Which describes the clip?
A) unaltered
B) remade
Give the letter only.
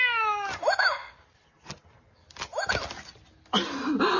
A